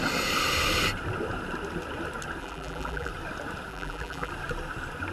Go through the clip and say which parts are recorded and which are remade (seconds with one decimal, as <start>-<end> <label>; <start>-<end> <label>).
0.0-2.4 recorded; 2.4-3.1 remade; 3.1-3.7 recorded; 3.7-4.3 remade; 4.3-5.1 recorded